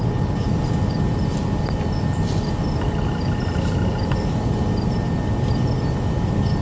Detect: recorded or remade recorded